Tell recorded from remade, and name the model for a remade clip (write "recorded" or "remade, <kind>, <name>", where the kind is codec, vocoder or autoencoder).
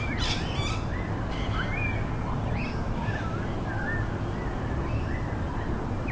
recorded